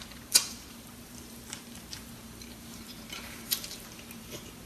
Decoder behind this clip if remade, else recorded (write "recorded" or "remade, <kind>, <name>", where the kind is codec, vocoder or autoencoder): remade, vocoder, BigVGAN v2